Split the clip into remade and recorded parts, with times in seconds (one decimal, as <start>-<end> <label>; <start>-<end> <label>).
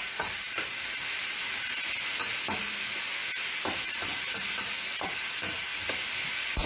0.0-6.7 recorded